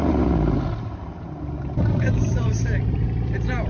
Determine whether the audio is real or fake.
fake